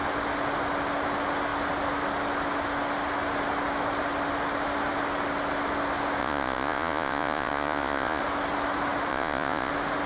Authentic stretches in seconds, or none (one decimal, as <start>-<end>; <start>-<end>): 0.0-6.2; 8.2-9.1; 9.7-10.1